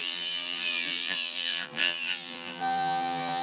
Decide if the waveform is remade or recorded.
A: remade